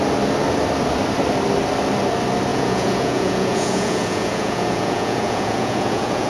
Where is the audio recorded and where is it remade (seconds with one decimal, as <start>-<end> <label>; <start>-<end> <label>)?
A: 0.0-2.5 recorded; 2.5-6.3 remade